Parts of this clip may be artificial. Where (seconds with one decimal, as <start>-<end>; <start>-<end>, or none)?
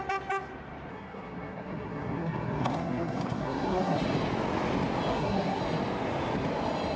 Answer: 0.9-4.0; 5.1-5.6